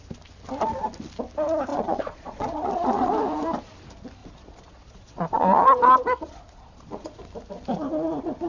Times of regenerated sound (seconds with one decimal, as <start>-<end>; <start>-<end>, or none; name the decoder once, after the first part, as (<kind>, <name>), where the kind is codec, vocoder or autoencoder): 1.7-3.1 (vocoder, Vocos); 4.2-7.2